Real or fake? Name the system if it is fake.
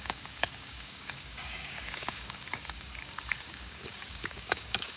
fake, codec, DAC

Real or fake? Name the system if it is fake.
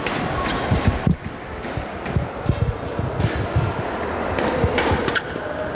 real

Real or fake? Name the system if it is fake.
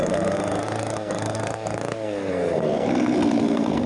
fake, codec, SNAC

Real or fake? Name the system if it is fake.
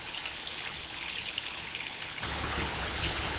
fake, codec, HILCodec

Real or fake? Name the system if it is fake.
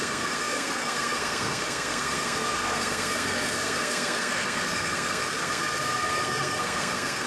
fake, codec, SNAC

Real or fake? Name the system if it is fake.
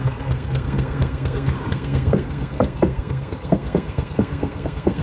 fake, codec, SNAC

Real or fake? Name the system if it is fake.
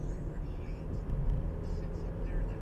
real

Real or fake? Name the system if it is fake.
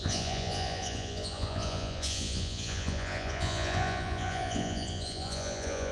fake, vocoder, Vocos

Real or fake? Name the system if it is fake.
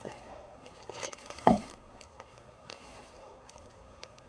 fake, codec, SNAC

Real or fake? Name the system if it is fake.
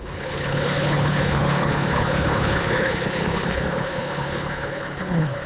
fake, codec, HILCodec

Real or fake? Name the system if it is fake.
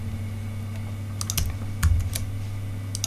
real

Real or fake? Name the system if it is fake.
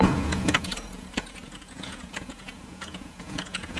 fake, vocoder, Vocos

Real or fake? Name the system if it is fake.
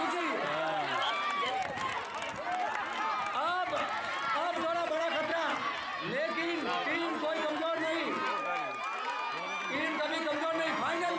real